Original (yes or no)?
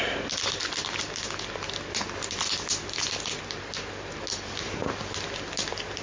yes